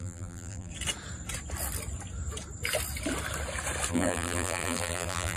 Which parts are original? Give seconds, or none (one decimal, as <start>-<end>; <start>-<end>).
0.7-3.9